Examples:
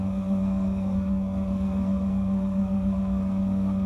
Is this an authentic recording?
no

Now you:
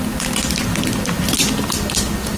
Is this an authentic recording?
yes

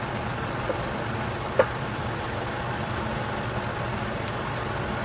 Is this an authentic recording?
yes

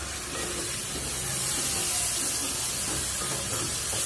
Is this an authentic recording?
yes